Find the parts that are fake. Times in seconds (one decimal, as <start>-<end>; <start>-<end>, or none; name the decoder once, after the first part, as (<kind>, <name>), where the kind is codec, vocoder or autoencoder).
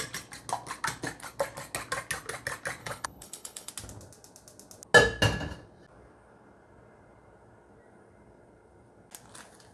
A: 2.8-3.7 (codec, HILCodec)